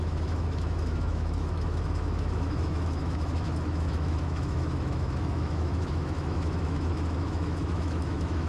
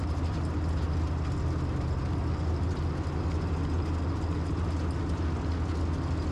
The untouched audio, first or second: second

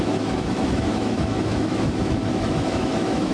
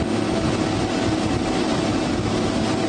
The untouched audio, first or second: second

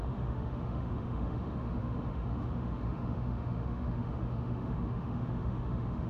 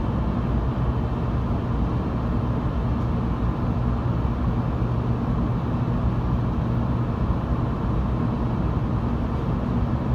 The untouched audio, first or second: second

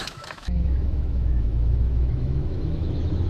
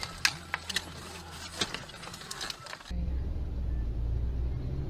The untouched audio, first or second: second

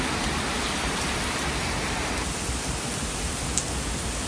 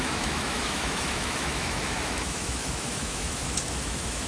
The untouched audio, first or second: first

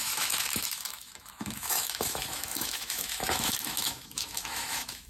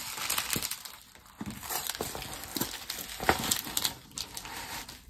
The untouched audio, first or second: second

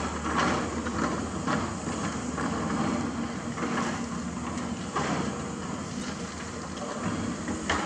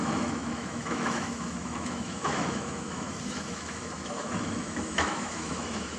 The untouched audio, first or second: first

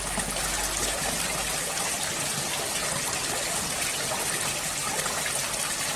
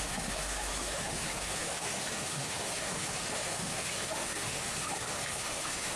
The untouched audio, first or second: first